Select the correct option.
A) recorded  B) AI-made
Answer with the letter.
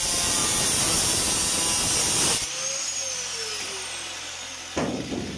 A